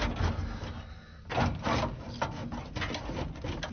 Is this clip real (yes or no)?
yes